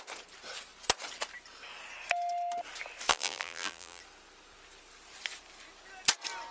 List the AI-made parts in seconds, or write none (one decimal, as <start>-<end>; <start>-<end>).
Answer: 3.1-4.0